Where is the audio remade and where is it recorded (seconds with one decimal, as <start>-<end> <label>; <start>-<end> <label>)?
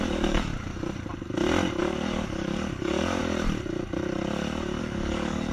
0.0-0.5 remade; 0.5-1.8 recorded; 1.8-3.2 remade; 3.2-4.8 recorded; 4.8-5.5 remade